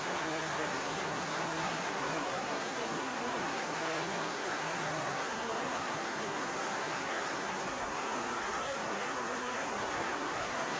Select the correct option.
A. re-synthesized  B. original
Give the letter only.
A